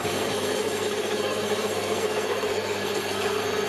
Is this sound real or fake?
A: fake